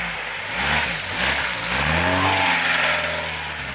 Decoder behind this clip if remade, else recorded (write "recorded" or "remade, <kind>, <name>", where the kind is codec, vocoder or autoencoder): recorded